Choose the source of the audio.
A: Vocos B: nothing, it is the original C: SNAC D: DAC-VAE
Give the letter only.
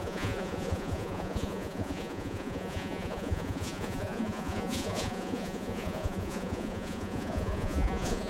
A